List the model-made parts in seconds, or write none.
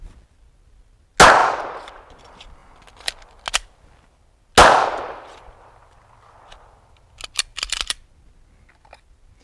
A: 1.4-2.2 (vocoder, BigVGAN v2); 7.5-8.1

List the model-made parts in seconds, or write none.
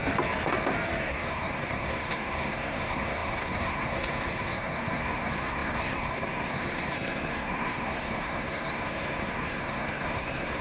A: 1.0-10.6 (codec, SNAC)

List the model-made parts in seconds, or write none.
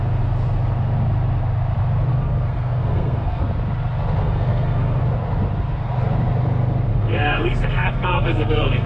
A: 2.1-3.4 (codec, SNAC); 4.2-5.0; 6.9-8.9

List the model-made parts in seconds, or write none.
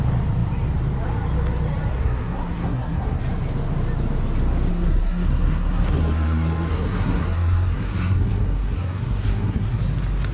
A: 1.9-3.2 (codec, SNAC); 4.7-9.8